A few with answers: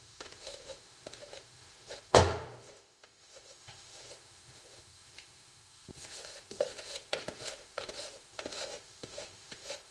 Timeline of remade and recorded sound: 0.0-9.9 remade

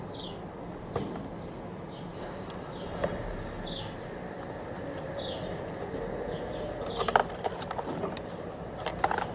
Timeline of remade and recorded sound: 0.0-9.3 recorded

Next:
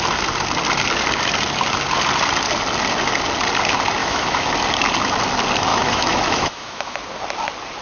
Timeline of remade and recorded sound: 0.0-4.0 recorded; 4.0-4.5 remade; 4.5-5.7 recorded; 5.7-7.0 remade; 7.0-7.8 recorded